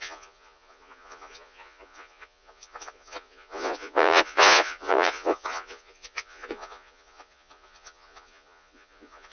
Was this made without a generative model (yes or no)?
no